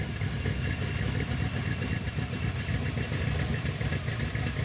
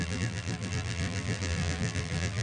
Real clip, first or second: first